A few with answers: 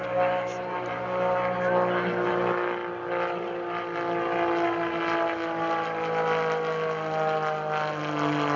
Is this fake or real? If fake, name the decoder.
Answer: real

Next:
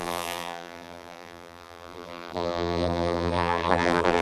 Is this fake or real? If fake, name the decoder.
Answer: fake, vocoder, BigVGAN v2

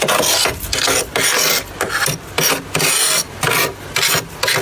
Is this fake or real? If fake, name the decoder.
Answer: real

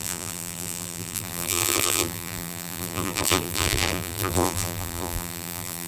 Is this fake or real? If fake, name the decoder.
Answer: fake, vocoder, BigVGAN v2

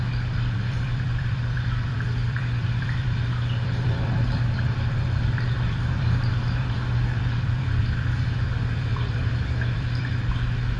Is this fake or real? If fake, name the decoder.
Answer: fake, vocoder, BigVGAN v2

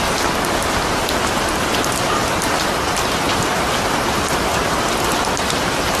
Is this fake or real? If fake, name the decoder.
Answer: real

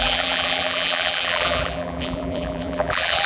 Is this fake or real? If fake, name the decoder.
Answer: fake, vocoder, BigVGAN v2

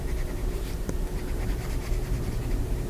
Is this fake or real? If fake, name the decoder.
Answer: fake, vocoder, BigVGAN v2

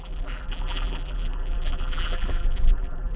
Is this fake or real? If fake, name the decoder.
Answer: fake, vocoder, BigVGAN v2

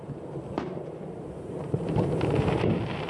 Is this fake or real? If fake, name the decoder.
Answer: fake, vocoder, BigVGAN v2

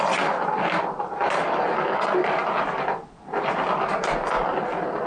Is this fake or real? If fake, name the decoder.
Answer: real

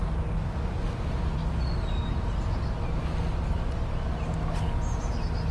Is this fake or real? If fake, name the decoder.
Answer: real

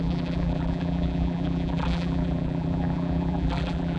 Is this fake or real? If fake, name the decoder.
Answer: fake, vocoder, BigVGAN v2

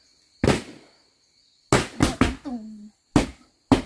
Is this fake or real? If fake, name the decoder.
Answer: real